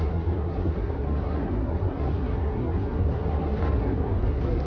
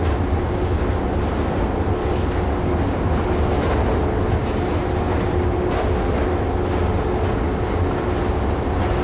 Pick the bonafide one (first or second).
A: second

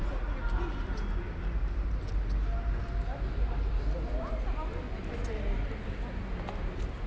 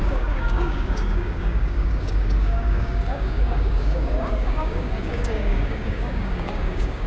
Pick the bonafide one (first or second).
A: first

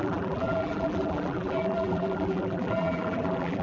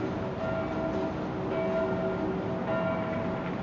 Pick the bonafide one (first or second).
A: second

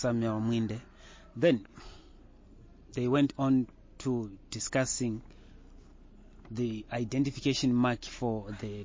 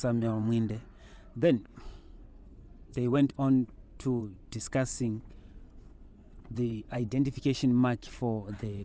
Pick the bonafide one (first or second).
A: first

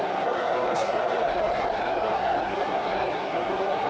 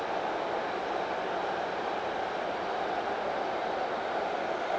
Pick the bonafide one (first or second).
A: second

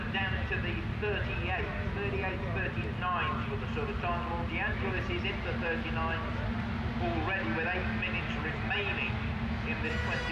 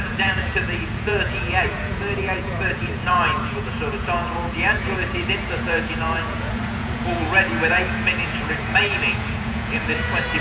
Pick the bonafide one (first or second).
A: first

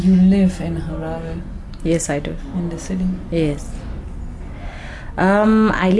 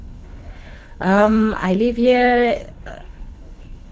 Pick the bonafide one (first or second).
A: first